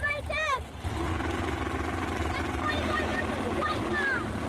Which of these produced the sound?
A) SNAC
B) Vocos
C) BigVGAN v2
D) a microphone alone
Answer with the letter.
D